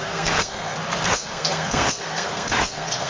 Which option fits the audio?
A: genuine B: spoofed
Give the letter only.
B